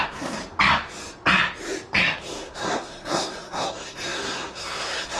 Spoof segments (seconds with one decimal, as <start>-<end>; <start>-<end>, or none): 0.0-0.4; 2.2-5.2